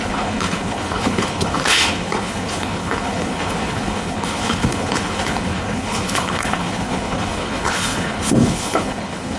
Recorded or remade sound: remade